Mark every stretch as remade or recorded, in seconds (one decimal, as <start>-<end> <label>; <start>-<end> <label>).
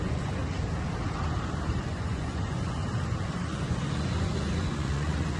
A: 0.0-0.4 remade; 0.4-1.9 recorded; 1.9-2.8 remade; 2.8-3.3 recorded; 3.3-5.4 remade